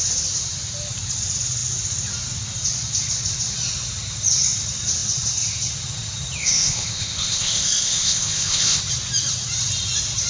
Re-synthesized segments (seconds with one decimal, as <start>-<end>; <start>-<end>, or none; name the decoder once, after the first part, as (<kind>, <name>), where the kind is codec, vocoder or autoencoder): 6.4-8.8 (codec, ZipCodec)